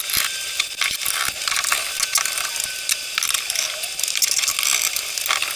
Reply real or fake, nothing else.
real